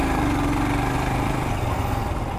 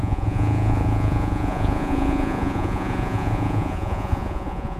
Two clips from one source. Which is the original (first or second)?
first